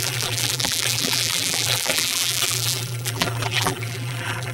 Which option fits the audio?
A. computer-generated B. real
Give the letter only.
A